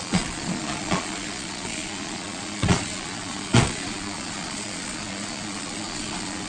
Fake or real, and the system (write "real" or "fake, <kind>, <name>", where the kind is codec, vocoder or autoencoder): fake, vocoder, Vocos